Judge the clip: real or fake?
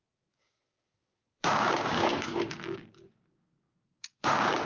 fake